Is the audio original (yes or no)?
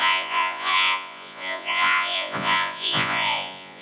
no